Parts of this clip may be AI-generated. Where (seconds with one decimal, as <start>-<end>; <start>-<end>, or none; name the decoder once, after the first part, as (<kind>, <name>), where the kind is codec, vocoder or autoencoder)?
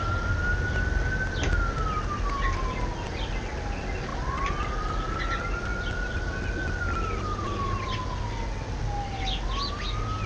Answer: none